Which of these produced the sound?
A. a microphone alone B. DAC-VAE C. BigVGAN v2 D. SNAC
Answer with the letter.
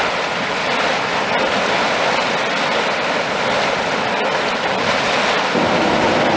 A